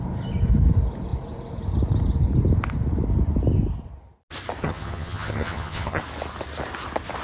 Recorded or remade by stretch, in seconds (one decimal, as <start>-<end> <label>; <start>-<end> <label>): 0.0-4.6 recorded; 4.6-6.0 remade; 6.0-7.2 recorded